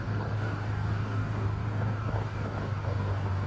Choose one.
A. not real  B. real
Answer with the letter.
A